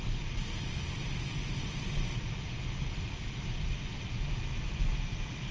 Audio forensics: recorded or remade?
recorded